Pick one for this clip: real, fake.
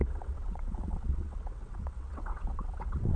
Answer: fake